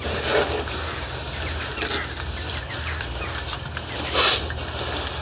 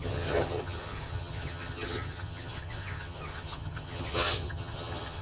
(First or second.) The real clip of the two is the first